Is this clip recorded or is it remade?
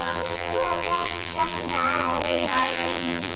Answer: remade